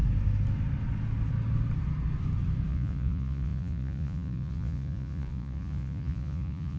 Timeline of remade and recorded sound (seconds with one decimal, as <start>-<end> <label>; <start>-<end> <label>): 0.0-2.7 recorded; 2.7-6.8 remade